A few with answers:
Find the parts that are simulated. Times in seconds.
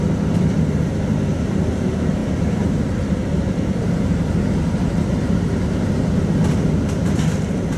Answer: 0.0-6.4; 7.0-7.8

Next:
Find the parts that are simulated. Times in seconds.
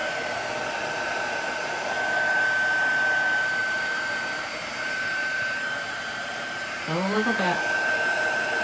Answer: 3.6-7.7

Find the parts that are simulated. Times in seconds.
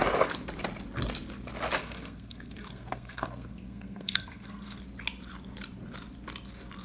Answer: 1.8-4.8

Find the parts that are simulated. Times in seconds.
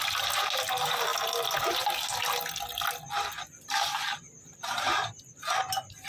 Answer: 4.1-5.3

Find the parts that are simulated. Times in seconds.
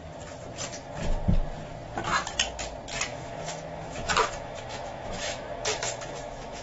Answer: 3.1-6.6